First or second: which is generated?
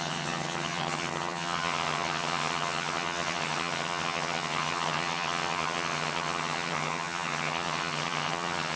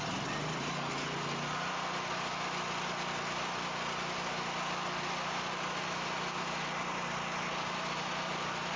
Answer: first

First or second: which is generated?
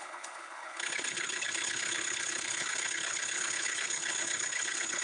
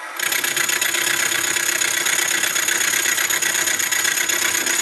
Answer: first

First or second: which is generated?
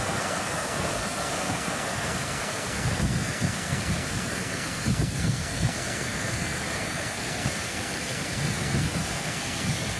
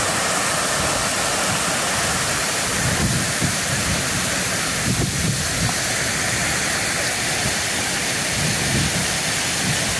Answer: first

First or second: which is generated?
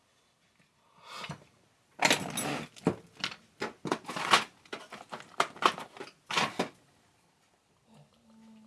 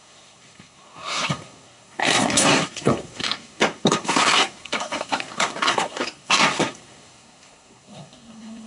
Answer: second